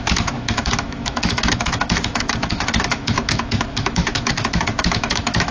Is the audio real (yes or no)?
no